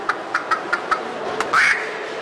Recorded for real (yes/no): no